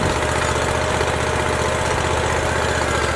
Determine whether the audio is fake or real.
real